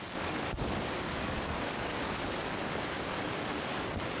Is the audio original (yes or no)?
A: no